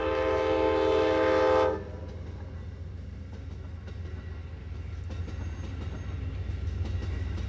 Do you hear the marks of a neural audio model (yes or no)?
no